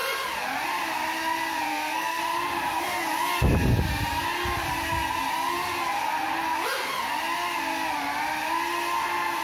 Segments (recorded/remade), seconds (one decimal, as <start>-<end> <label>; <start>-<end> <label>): 0.0-1.7 recorded; 1.7-2.2 remade; 2.2-9.4 recorded

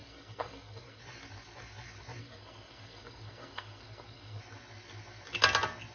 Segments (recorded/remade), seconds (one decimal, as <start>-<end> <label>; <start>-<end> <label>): 0.0-1.0 remade; 1.0-2.2 recorded; 2.2-4.4 remade; 4.4-5.9 recorded

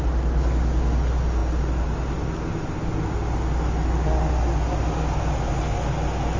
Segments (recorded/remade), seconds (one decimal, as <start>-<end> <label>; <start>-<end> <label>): 0.0-6.4 recorded